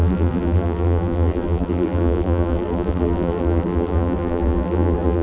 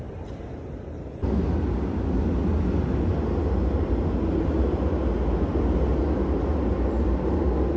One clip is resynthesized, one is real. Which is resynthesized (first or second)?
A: first